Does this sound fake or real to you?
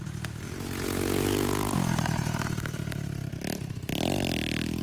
real